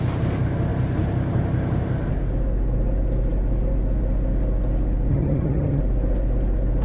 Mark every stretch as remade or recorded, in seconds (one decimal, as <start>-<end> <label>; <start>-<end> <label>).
0.0-5.1 recorded; 5.1-5.8 remade; 5.8-6.8 recorded